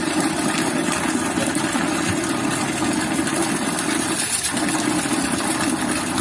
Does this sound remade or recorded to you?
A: recorded